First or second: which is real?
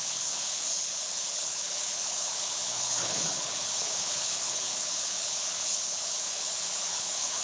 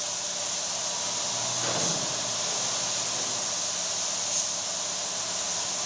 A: second